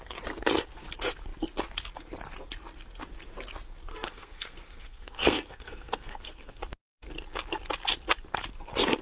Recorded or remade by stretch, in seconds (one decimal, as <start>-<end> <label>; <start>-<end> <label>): 0.0-3.9 recorded; 3.9-6.6 remade; 6.6-9.0 recorded